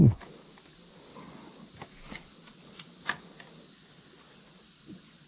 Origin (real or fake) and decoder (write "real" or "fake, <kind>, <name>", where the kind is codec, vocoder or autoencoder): real